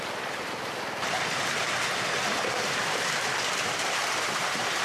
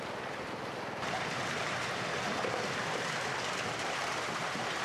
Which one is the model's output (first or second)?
first